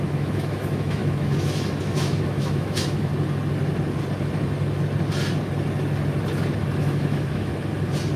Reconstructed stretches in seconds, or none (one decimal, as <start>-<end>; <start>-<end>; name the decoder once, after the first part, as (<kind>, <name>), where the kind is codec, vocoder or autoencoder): 0.0-3.1 (autoencoder, DAC-VAE); 6.8-7.5